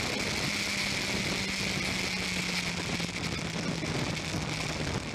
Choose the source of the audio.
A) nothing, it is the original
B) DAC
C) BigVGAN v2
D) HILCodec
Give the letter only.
A